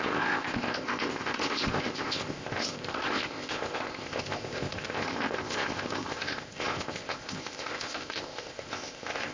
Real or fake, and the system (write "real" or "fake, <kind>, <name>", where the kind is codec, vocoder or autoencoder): fake, codec, ZipCodec